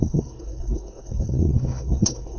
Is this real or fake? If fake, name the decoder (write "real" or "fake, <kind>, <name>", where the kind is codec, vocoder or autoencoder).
fake, codec, SNAC